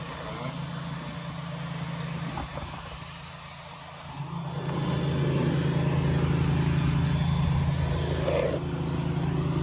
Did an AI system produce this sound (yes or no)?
no